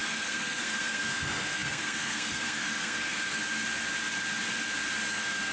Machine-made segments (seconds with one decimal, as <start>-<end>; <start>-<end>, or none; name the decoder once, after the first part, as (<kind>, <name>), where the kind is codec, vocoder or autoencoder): 0.0-3.4 (codec, SNAC); 5.1-5.5